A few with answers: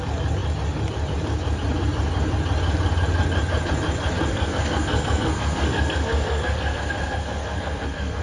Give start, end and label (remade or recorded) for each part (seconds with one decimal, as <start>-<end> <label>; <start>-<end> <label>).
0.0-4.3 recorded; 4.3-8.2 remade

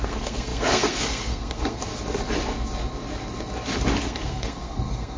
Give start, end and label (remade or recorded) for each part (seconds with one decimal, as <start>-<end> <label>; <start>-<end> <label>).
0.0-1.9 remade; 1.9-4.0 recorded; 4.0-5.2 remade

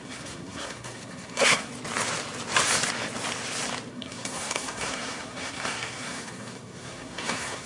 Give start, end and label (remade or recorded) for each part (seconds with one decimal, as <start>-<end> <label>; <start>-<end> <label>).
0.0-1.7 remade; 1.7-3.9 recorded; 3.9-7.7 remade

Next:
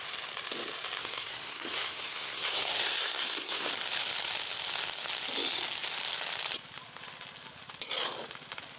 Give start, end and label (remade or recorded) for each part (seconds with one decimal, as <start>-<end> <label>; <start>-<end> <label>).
0.0-1.0 recorded; 1.0-3.7 remade; 3.7-8.8 recorded